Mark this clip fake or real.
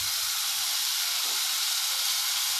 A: real